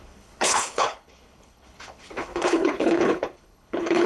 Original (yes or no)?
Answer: no